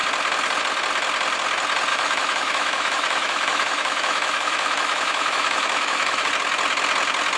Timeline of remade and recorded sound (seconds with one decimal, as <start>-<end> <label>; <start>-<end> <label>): 0.0-1.9 recorded; 1.9-6.3 remade; 6.3-7.4 recorded

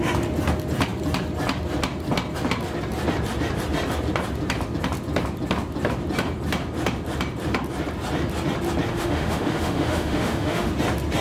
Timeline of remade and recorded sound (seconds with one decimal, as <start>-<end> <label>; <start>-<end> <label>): 0.0-8.9 recorded; 8.9-10.7 remade; 10.7-11.2 recorded